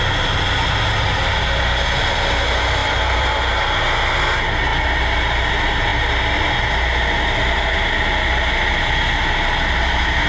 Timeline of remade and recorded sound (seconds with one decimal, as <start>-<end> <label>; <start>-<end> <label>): 0.0-2.8 recorded; 2.8-3.4 remade; 3.4-4.7 recorded; 4.7-5.5 remade; 5.5-10.3 recorded